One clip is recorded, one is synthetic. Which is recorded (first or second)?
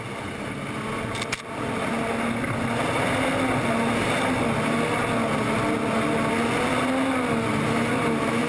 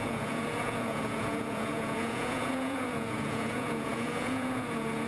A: first